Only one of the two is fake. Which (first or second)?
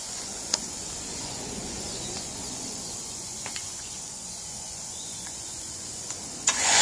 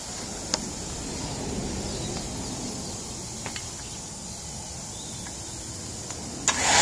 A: first